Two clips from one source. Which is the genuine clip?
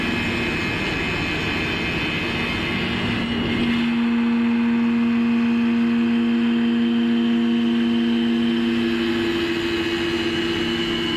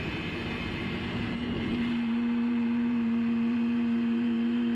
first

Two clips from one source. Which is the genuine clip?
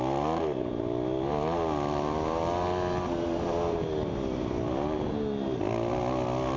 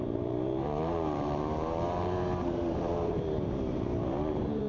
first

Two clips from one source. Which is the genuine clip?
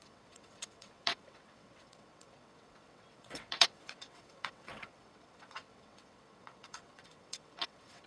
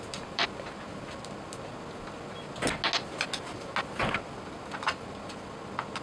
second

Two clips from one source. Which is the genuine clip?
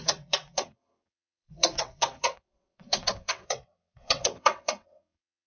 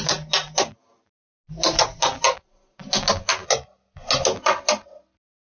second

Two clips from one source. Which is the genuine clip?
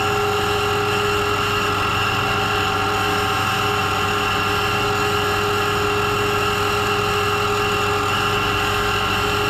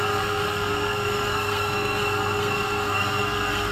first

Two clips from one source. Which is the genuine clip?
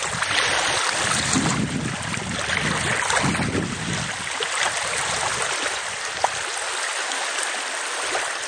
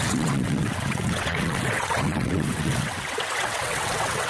first